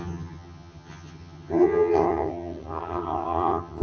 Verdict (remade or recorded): remade